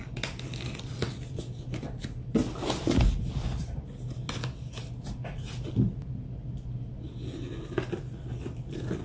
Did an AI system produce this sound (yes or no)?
no